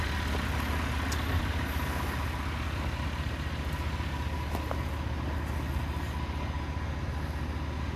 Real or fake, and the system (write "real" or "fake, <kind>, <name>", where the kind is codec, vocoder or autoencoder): real